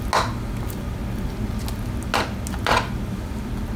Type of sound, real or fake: real